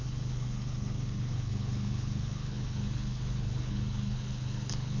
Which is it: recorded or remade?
remade